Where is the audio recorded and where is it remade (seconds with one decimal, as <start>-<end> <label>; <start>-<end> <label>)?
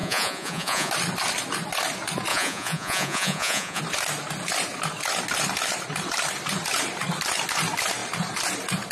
0.0-0.9 remade; 0.9-2.3 recorded; 2.3-3.8 remade; 3.8-8.9 recorded